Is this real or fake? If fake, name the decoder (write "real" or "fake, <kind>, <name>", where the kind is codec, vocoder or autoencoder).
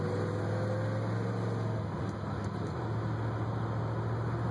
real